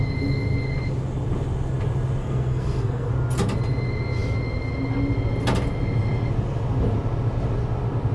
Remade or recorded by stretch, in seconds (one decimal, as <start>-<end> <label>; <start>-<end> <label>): 0.0-2.2 recorded; 2.2-3.1 remade; 3.1-8.1 recorded